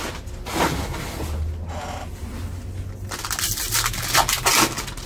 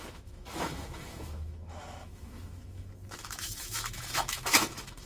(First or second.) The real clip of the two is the first